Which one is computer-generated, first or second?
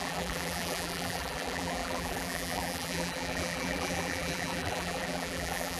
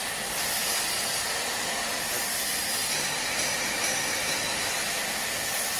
first